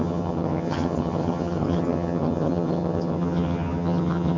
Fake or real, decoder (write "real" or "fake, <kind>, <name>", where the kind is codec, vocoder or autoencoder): fake, vocoder, HiFi-GAN